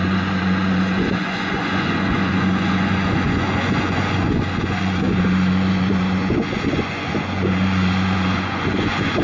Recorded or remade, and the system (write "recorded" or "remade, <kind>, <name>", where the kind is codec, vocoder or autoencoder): remade, vocoder, Vocos